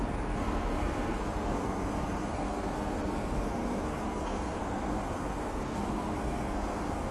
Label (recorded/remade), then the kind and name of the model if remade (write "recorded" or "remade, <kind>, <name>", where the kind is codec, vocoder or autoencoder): remade, codec, SNAC